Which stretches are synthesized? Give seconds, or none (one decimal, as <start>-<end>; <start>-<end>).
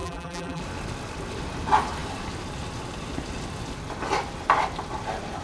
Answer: 0.0-0.6